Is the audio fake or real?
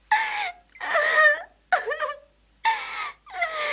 real